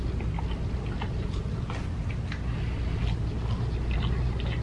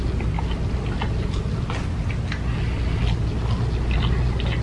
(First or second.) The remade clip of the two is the first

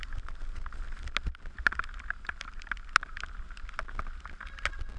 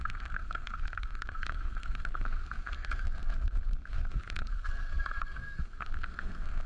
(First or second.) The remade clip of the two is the second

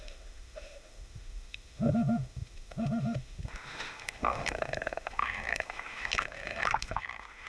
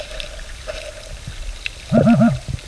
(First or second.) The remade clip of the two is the first